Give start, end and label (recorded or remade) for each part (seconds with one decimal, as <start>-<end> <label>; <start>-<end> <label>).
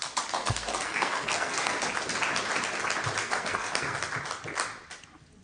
0.0-0.4 recorded; 0.4-1.8 remade; 1.8-3.2 recorded; 3.2-4.0 remade; 4.0-5.4 recorded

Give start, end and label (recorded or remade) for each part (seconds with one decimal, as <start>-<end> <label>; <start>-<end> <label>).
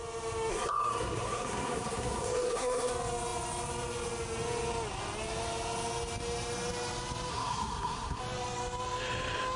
0.0-0.5 recorded; 0.5-2.9 remade; 2.9-7.3 recorded; 7.3-8.2 remade; 8.2-9.6 recorded